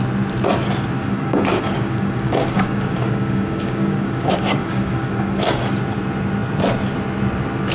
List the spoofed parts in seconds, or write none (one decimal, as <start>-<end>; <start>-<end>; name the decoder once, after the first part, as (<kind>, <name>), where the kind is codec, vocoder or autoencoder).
1.0-5.6 (codec, DAC)